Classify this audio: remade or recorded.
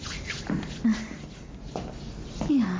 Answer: recorded